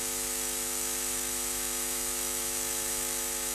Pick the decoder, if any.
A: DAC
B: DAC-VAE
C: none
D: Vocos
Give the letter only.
B